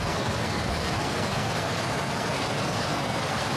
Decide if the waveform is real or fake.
fake